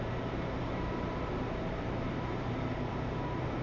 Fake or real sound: fake